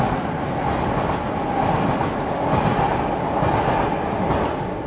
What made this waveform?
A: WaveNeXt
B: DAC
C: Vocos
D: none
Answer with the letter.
D